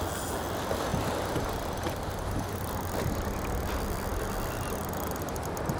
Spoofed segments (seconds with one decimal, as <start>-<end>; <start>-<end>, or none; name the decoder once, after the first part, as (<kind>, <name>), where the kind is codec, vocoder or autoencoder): none